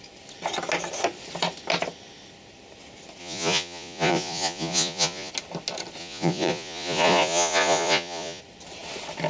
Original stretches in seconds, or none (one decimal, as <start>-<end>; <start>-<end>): 0.0-3.2; 5.3-6.0; 8.4-9.3